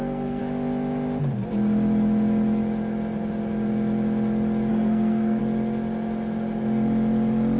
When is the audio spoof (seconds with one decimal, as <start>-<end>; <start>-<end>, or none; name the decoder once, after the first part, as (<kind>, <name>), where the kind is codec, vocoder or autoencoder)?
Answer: 0.0-0.4 (codec, SNAC); 4.7-5.4